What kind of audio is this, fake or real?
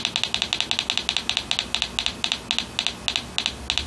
real